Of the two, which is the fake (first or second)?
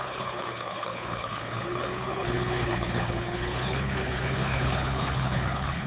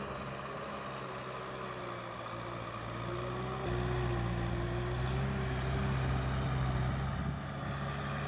first